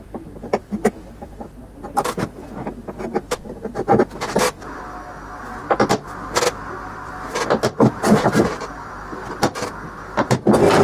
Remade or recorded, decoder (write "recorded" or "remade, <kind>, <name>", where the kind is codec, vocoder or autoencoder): recorded